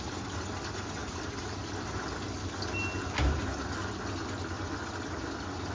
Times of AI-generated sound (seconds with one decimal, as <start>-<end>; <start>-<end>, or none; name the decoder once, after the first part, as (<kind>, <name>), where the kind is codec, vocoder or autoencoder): none